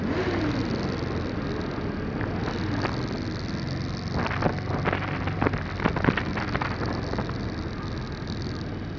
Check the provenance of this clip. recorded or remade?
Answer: recorded